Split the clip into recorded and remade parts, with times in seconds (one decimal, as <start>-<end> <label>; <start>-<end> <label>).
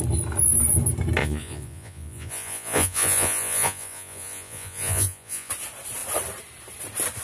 0.0-1.2 recorded; 1.2-5.5 remade; 5.5-7.2 recorded